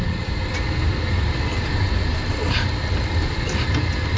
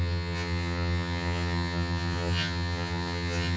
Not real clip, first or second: second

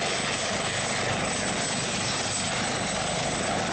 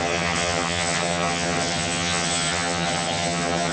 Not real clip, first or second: second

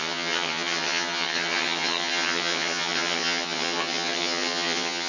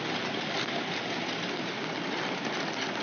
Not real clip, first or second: first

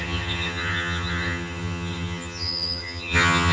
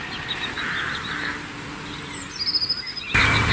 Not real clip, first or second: first